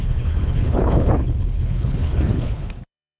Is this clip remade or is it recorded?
remade